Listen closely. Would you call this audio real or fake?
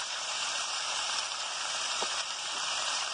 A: fake